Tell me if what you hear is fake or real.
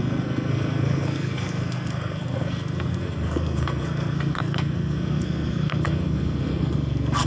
fake